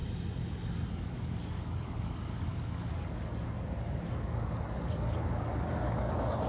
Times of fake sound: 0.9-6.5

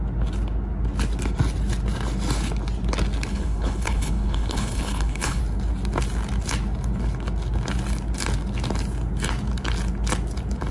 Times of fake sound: 3.3-5.4

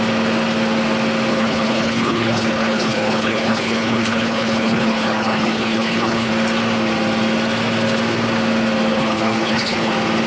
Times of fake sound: 1.3-6.3; 8.9-9.9